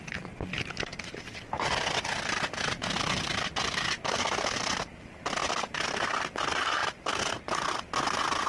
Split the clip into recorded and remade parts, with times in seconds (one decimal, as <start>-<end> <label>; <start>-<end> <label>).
0.0-8.5 recorded